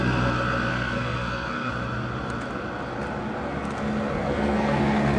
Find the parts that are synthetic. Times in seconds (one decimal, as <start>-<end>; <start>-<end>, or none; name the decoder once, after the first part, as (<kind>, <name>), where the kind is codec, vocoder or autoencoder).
0.7-1.7 (codec, SNAC); 4.2-4.8

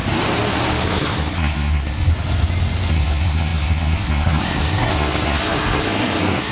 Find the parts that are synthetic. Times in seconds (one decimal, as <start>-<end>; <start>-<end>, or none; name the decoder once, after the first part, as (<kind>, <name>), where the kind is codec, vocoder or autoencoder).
0.8-2.1 (codec, SNAC); 2.9-6.5

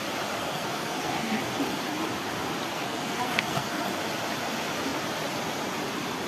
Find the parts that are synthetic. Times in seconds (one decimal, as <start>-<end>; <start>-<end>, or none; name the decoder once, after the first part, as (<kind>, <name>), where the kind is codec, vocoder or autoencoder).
0.4-1.4 (codec, SNAC); 2.7-4.0

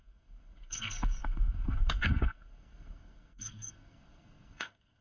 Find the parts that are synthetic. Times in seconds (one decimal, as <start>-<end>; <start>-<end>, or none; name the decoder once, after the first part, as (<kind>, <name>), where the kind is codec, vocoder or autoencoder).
0.0-5.0 (codec, SNAC)

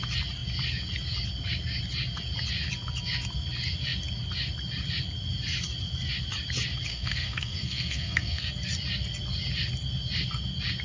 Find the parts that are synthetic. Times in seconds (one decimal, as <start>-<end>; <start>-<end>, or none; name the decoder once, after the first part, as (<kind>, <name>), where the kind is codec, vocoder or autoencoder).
6.9-8.5 (codec, SNAC)

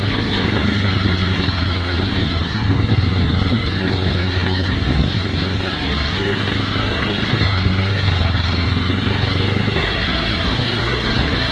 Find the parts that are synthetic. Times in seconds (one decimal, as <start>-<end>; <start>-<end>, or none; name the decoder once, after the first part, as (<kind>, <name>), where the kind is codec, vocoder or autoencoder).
0.0-11.5 (codec, SNAC)